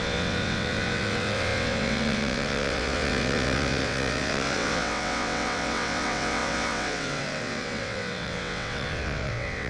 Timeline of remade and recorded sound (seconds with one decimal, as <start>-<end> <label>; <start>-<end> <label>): 0.0-9.7 remade